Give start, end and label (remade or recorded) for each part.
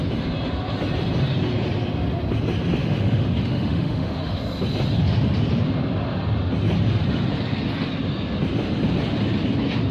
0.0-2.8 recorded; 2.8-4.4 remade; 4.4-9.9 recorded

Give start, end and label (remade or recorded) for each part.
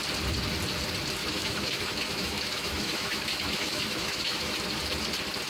0.0-1.2 recorded; 1.2-4.5 remade; 4.5-5.5 recorded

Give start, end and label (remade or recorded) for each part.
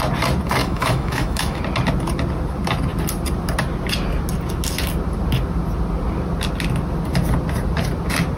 0.0-0.6 recorded; 0.6-1.6 remade; 1.6-8.4 recorded